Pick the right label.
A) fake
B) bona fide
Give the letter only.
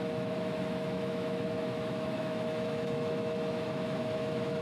A